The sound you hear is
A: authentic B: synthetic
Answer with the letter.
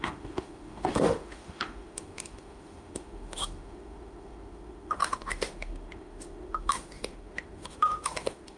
B